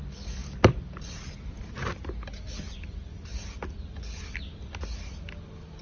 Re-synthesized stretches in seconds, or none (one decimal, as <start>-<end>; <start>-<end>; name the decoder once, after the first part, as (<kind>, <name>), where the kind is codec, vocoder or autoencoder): 0.4-3.9 (vocoder, BigVGAN v2)